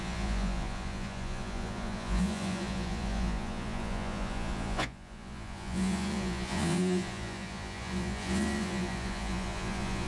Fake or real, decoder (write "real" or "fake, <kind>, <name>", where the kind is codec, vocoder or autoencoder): fake, vocoder, Vocos